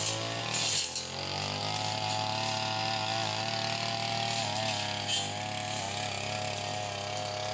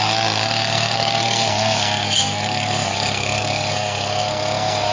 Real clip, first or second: first